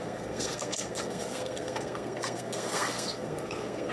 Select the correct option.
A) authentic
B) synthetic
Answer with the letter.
B